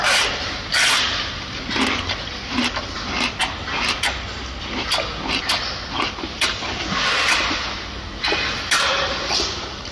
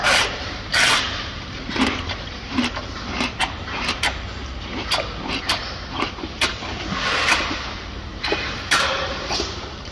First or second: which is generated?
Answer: second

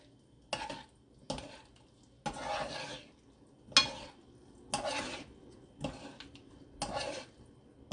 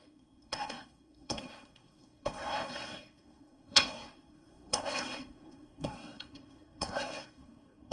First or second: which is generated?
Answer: second